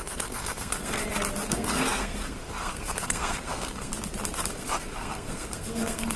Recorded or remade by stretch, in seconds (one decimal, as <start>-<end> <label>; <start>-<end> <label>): 0.0-1.0 remade; 1.0-1.5 recorded; 1.5-3.9 remade; 3.9-4.5 recorded; 4.5-6.2 remade